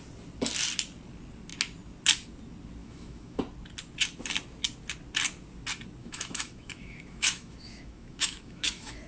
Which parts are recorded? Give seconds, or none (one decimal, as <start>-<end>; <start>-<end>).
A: 0.0-2.8; 3.4-6.0